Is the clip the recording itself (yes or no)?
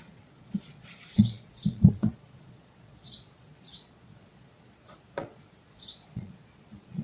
no